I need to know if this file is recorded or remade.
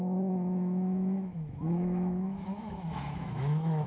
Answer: remade